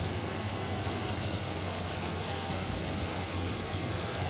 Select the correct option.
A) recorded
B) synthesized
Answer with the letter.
B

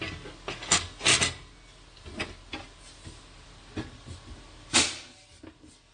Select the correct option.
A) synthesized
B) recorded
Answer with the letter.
B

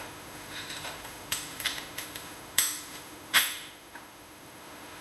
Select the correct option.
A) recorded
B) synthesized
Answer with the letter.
B